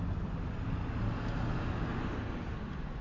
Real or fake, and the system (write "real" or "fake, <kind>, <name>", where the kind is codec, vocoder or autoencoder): real